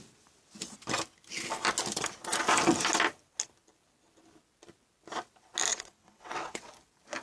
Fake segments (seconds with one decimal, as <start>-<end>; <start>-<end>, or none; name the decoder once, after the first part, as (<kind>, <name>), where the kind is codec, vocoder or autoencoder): 5.7-6.7 (vocoder, WaveNeXt)